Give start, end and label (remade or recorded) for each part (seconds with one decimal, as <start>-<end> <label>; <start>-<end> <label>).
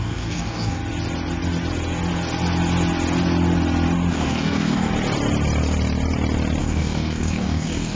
0.0-0.8 remade; 0.8-4.1 recorded; 4.1-4.9 remade; 4.9-6.6 recorded; 6.6-8.0 remade